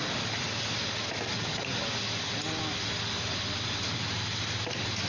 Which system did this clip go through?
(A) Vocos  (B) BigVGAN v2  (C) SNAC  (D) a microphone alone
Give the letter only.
D